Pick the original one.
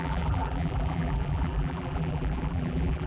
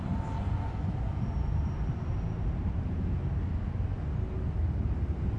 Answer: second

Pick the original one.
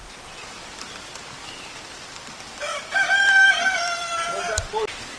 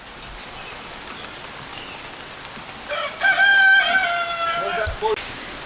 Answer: second